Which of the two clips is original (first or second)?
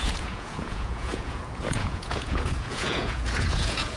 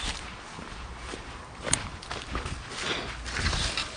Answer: second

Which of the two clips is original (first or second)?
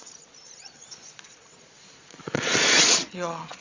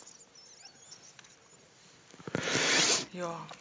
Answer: second